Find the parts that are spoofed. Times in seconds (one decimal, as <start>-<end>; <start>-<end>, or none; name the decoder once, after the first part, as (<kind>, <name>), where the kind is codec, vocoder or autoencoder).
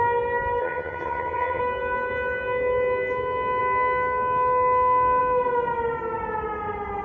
0.6-1.6 (vocoder, HiFi-GAN)